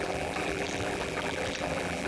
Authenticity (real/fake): fake